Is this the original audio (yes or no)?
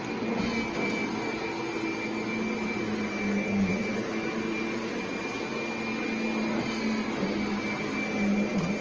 yes